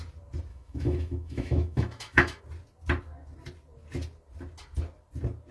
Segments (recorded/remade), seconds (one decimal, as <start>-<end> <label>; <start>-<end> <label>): 0.0-0.5 recorded; 0.5-2.4 remade; 2.4-5.5 recorded